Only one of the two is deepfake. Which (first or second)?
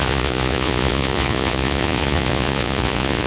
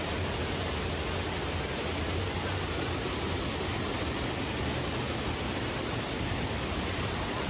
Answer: first